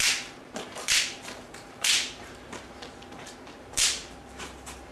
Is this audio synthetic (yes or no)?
yes